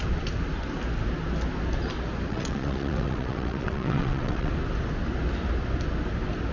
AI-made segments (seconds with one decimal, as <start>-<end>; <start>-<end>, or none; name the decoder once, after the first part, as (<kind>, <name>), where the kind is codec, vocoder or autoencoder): 2.3-4.5 (vocoder, WaveNeXt)